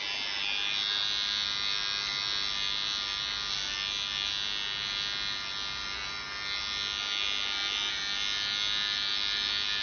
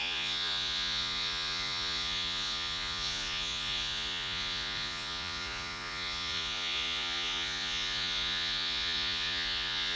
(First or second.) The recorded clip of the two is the first